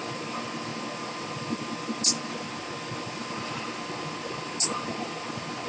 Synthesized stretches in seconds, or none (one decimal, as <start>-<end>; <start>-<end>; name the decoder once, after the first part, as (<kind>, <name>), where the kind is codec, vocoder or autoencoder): none